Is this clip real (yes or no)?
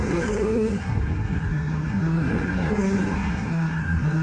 no